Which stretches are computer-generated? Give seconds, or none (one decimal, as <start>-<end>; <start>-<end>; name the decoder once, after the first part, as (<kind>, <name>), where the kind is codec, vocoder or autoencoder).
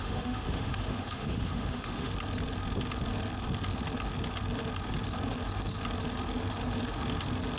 0.0-2.1 (autoencoder, DAC-VAE)